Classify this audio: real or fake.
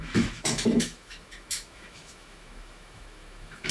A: fake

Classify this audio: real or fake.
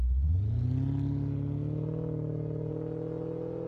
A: real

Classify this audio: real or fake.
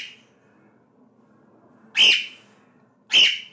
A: real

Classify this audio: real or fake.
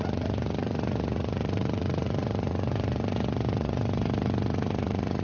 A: fake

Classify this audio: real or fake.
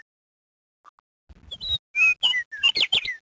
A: real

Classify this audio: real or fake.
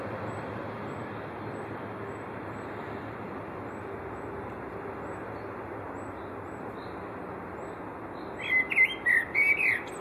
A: real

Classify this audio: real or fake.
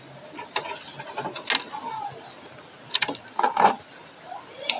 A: real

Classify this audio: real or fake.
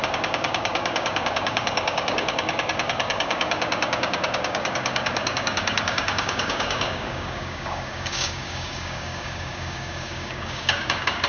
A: fake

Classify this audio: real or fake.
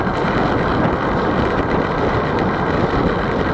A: real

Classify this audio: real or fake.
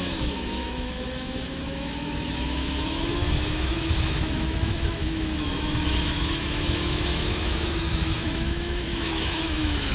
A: fake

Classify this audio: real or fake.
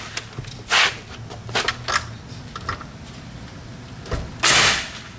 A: real